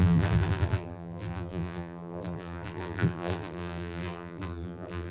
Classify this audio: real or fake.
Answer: fake